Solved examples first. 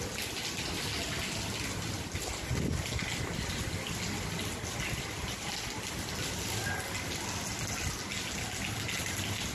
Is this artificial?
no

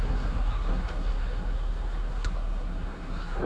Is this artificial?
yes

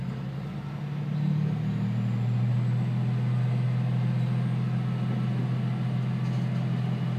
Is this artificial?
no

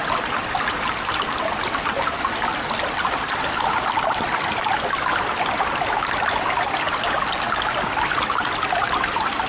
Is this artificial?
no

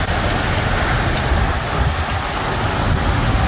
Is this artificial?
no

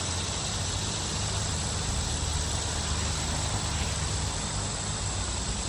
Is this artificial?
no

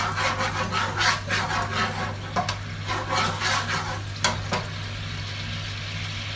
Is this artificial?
no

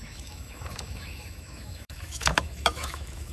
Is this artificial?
yes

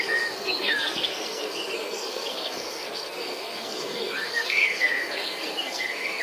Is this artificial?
yes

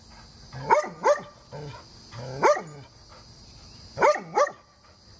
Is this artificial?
no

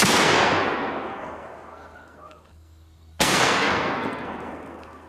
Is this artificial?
yes